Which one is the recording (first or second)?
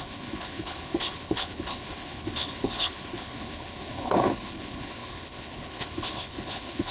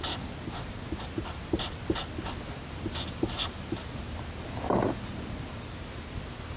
second